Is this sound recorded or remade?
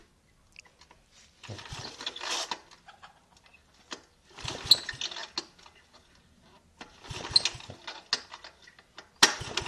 recorded